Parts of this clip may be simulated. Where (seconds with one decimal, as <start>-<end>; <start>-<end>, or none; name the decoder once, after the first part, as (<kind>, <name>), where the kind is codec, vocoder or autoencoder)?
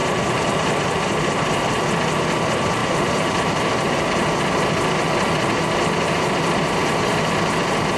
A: 0.0-1.8 (vocoder, BigVGAN v2); 2.8-4.0; 6.8-7.3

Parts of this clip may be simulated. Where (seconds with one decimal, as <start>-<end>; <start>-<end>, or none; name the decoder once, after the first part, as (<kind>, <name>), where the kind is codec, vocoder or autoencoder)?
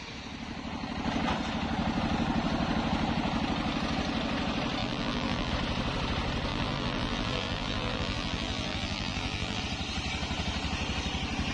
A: 4.8-5.5 (vocoder, BigVGAN v2); 6.5-9.6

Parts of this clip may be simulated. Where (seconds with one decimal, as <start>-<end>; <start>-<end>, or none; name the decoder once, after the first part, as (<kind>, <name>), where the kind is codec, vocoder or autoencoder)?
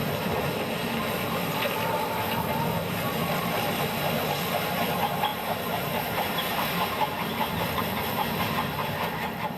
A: 5.3-8.5 (vocoder, BigVGAN v2)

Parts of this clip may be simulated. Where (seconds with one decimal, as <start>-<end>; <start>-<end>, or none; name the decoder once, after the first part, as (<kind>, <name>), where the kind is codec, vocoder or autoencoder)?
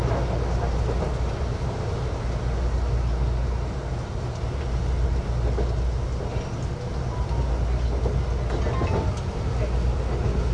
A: none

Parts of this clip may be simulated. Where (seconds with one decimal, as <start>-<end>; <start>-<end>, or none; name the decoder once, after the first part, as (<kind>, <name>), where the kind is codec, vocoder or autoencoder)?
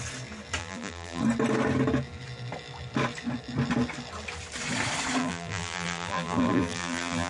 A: 0.6-1.2 (vocoder, BigVGAN v2); 5.2-7.3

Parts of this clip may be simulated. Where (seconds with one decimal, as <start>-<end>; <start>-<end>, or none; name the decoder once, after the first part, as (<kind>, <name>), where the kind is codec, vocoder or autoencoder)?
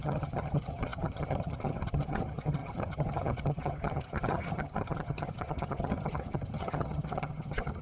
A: 0.0-7.8 (vocoder, HiFi-GAN)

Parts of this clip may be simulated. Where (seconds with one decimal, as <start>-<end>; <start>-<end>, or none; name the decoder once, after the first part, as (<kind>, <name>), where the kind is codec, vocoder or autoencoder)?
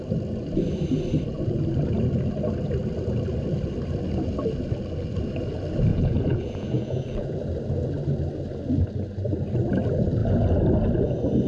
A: 5.9-7.4 (vocoder, Vocos)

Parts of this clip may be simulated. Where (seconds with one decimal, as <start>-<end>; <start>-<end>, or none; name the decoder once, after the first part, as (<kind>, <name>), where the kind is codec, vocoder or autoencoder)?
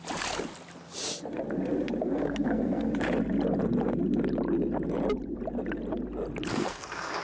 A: 2.0-2.9 (codec, SNAC); 6.5-7.2